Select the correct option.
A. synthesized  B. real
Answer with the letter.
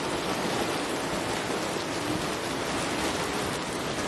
B